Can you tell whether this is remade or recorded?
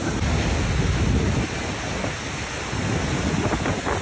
recorded